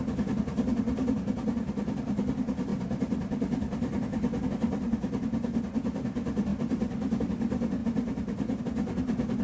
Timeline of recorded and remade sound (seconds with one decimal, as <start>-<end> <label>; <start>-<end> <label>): 0.0-7.8 recorded; 7.8-8.6 remade; 8.6-9.4 recorded